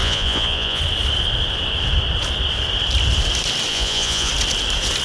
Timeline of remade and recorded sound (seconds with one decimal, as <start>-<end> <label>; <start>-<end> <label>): 0.0-0.8 remade; 0.8-3.7 recorded; 3.7-4.3 remade; 4.3-5.0 recorded